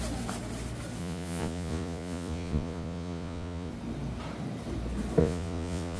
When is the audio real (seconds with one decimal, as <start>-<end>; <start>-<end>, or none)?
0.0-1.0; 3.7-5.2